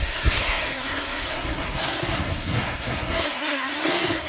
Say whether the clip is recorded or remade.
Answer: remade